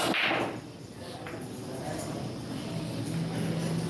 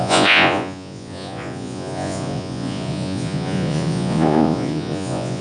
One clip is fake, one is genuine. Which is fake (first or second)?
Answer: second